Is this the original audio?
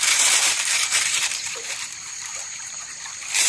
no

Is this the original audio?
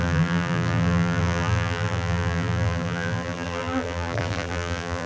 no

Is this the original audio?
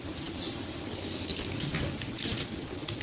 yes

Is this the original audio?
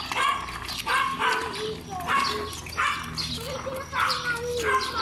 yes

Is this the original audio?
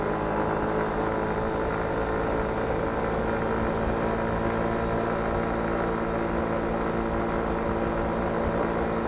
yes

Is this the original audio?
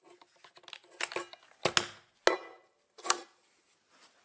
yes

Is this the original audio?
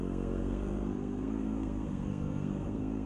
no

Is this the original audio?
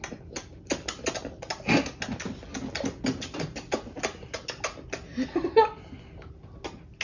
yes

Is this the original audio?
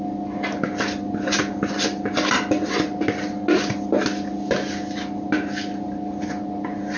yes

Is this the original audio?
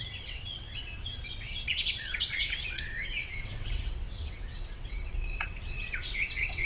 no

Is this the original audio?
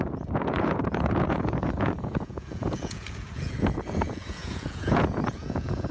no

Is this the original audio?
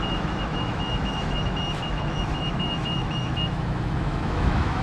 no